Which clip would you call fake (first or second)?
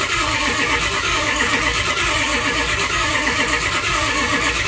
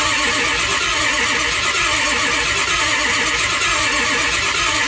first